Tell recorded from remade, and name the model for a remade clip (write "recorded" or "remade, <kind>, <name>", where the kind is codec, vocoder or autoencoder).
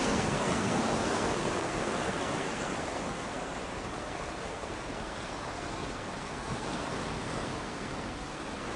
remade, codec, SNAC